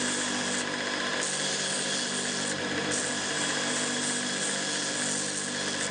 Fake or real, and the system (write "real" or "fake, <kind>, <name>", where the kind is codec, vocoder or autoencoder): real